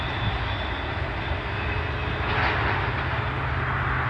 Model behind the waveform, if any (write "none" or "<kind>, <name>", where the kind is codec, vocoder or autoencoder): none